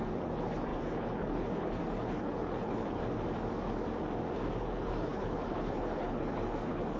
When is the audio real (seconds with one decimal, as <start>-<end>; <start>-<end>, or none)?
3.0-4.6